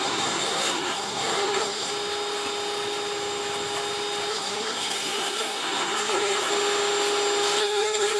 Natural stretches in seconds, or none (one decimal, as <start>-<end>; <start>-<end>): 1.9-4.3; 6.5-7.6